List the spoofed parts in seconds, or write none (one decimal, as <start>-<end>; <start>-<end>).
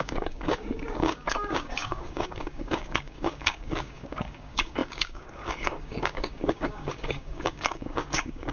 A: 0.0-8.5